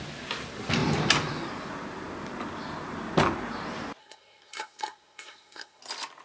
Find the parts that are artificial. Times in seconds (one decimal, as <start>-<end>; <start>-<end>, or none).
4.0-5.8